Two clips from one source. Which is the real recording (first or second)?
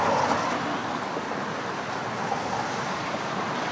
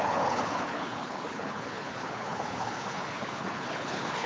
first